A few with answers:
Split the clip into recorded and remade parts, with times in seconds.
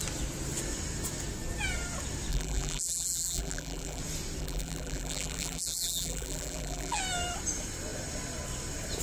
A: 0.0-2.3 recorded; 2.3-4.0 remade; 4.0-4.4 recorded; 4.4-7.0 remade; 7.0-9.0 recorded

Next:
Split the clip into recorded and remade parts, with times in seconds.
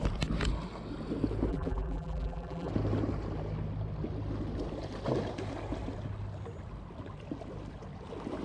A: 0.0-1.5 recorded; 1.5-2.7 remade; 2.7-8.4 recorded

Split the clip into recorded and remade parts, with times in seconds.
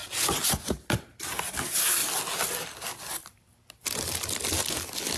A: 0.0-5.2 recorded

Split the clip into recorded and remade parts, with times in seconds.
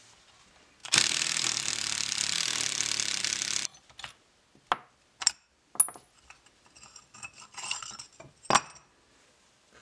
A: 0.0-9.8 recorded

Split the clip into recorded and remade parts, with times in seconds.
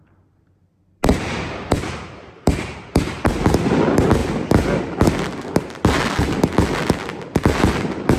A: 0.0-1.1 recorded; 1.1-2.9 remade; 2.9-8.2 recorded